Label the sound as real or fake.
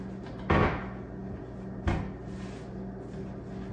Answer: real